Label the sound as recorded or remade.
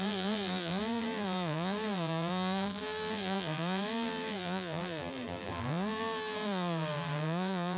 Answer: remade